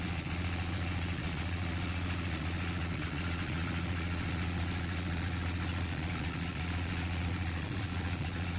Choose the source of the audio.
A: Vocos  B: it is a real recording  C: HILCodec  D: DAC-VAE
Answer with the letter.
A